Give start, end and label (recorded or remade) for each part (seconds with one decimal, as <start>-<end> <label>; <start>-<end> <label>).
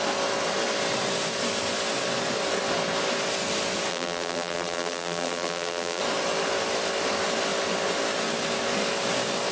0.0-3.9 recorded; 3.9-6.0 remade; 6.0-9.5 recorded